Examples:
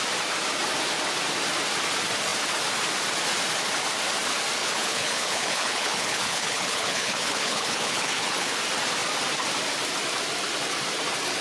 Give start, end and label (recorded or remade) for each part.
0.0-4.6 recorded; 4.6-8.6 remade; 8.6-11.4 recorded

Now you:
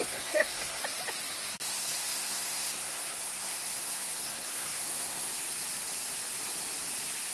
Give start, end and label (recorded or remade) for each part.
0.0-0.8 remade; 0.8-1.5 recorded; 1.5-5.3 remade; 5.3-7.3 recorded